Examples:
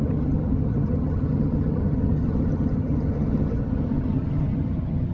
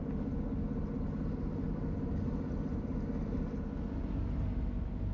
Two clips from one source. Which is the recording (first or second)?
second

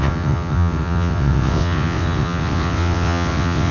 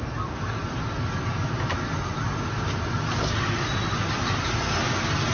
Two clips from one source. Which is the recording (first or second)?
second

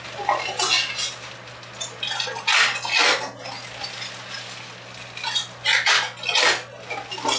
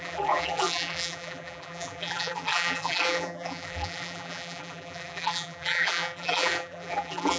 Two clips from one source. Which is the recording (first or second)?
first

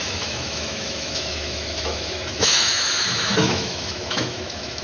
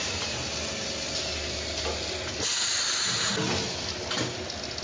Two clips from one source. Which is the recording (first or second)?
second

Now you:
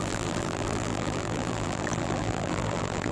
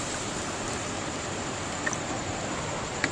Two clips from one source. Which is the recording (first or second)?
second